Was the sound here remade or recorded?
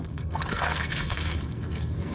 remade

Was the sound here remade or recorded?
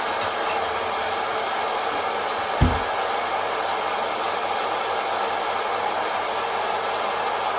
recorded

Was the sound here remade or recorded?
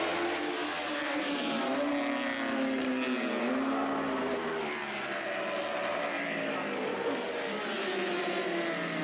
recorded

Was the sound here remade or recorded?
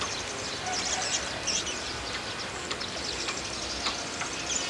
recorded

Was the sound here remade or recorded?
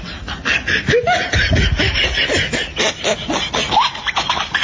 recorded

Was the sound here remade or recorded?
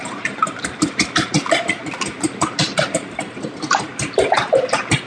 recorded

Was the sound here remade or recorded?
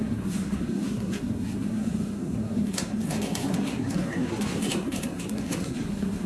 remade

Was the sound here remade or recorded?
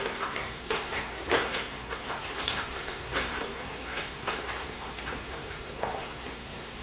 remade